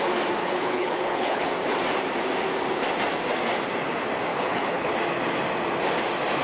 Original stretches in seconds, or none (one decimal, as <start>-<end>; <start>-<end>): 0.0-0.4; 1.5-4.3; 4.9-6.4